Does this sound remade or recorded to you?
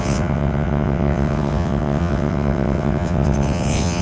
remade